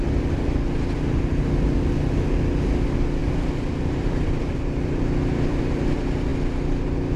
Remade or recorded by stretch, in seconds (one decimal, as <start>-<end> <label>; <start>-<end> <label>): 0.0-3.2 recorded; 3.2-5.6 remade; 5.6-7.2 recorded